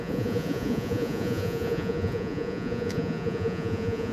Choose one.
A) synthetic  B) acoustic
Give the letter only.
A